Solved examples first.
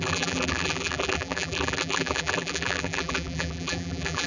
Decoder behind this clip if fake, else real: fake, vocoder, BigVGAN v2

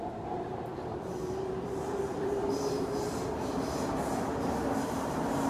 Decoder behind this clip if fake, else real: fake, vocoder, BigVGAN v2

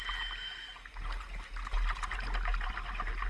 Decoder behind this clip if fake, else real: real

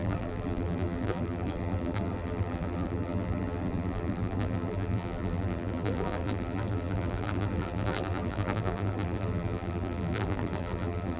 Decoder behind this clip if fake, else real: fake, vocoder, BigVGAN v2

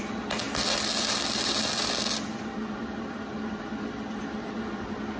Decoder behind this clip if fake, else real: real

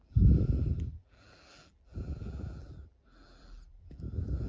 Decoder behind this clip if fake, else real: fake, vocoder, BigVGAN v2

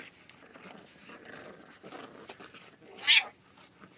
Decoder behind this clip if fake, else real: real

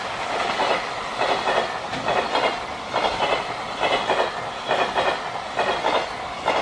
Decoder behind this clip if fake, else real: real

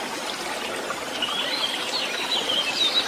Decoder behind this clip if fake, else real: real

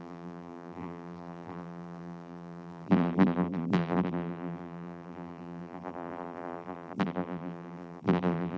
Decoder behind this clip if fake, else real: fake, vocoder, BigVGAN v2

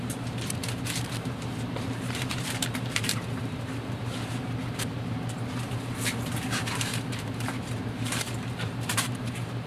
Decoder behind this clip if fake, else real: fake, vocoder, BigVGAN v2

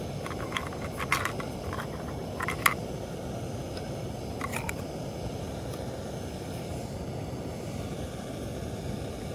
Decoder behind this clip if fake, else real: real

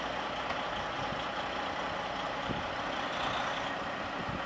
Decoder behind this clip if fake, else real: real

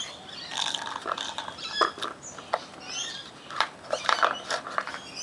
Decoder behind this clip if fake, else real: real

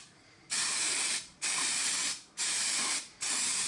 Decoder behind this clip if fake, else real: fake, vocoder, BigVGAN v2